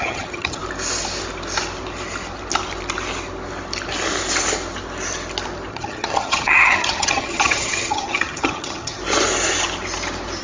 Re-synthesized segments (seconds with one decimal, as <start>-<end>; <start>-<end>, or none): 0.0-0.6; 5.7-9.0